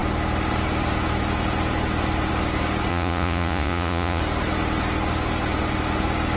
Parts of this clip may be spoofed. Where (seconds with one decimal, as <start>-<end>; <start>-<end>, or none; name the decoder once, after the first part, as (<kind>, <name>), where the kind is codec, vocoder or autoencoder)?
2.9-4.2 (vocoder, Vocos)